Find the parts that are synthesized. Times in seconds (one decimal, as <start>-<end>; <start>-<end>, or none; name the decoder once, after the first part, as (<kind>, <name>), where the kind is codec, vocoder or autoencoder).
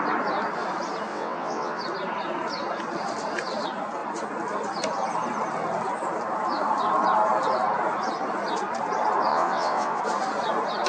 1.1-1.8 (vocoder, WaveNeXt); 9.3-10.0